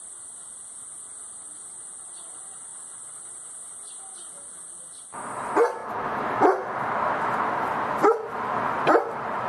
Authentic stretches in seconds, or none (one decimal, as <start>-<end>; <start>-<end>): 0.0-9.5